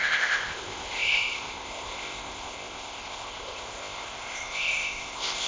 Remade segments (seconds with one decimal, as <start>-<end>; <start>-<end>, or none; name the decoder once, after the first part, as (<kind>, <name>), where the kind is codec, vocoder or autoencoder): 0.0-5.5 (codec, ZipCodec)